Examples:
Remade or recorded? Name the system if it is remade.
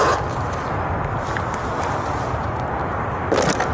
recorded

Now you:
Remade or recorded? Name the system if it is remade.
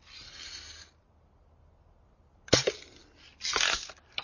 recorded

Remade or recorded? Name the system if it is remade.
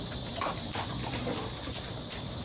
recorded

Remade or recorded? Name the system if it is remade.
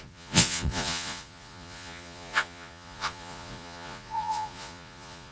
remade, vocoder, Vocos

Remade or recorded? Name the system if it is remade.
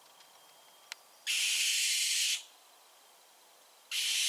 recorded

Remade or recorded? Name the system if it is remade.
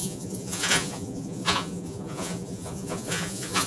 remade, vocoder, Vocos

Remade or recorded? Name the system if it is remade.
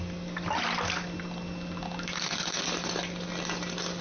recorded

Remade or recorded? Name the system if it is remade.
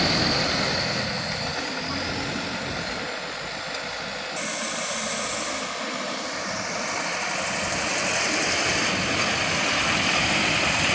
recorded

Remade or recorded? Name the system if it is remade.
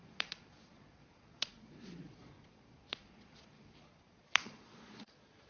remade, vocoder, Vocos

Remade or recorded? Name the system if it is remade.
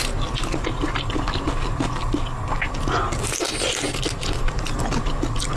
recorded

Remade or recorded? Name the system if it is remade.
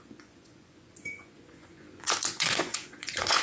remade, vocoder, Vocos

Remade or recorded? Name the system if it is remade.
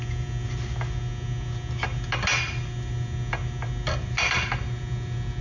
recorded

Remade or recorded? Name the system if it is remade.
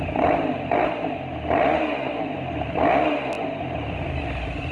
recorded